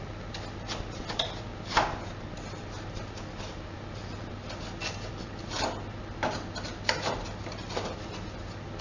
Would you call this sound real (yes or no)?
yes